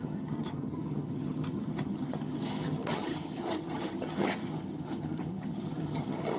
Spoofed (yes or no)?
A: yes